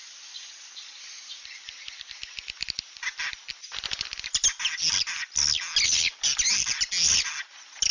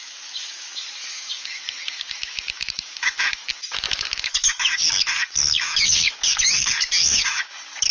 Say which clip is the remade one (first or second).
second